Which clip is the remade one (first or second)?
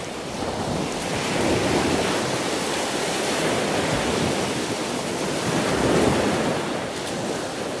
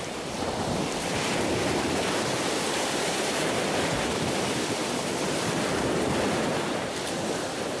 second